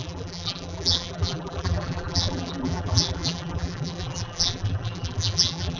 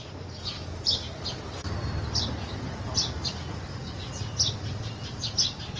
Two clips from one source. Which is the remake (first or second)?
first